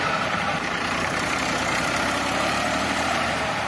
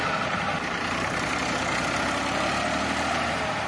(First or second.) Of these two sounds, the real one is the second